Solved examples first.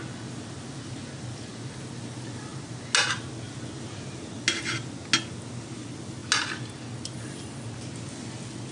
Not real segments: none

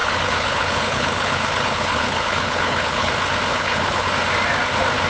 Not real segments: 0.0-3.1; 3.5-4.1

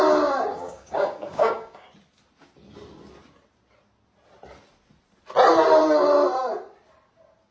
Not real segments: 0.5-1.9

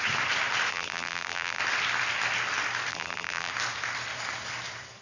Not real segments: 0.7-1.6; 2.9-3.5

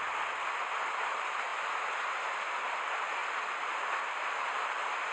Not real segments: none

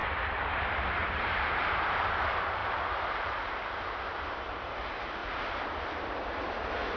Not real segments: 0.0-2.0; 5.2-5.8